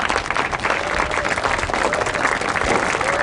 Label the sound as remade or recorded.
recorded